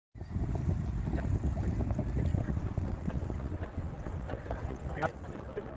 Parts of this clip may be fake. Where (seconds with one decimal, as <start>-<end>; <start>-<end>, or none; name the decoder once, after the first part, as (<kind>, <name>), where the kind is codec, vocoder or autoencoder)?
2.3-5.8 (vocoder, WaveNeXt)